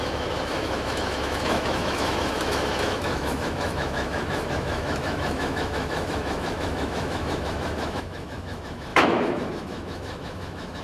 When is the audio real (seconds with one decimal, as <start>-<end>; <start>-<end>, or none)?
none